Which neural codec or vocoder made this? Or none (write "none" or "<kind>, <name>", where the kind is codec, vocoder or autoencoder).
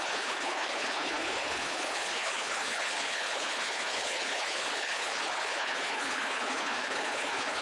codec, HILCodec